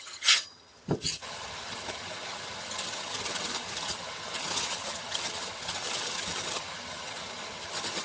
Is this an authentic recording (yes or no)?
no